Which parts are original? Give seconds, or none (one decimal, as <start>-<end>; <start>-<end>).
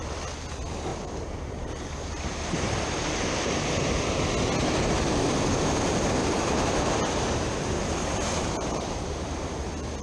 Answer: 0.0-0.9; 3.8-6.2; 9.1-10.0